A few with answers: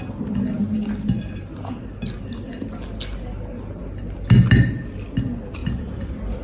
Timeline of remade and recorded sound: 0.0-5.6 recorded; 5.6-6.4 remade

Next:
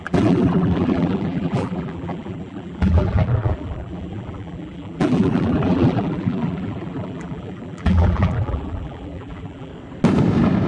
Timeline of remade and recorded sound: 0.0-9.7 remade; 9.7-10.7 recorded

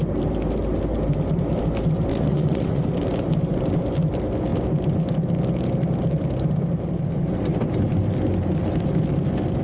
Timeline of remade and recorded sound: 0.0-2.1 recorded; 2.1-2.8 remade; 2.8-9.6 recorded

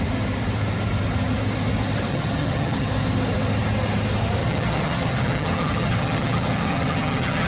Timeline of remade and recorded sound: 0.0-2.1 recorded; 2.1-2.9 remade; 2.9-4.4 recorded; 4.4-7.5 remade

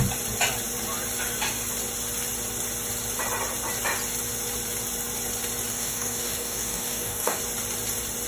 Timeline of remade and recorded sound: 0.0-5.7 recorded; 5.7-7.4 remade; 7.4-8.3 recorded

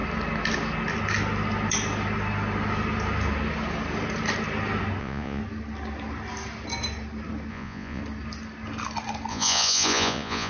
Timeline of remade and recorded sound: 0.0-5.0 recorded; 5.0-5.4 remade; 5.4-7.5 recorded; 7.5-8.0 remade; 8.0-9.3 recorded; 9.3-10.5 remade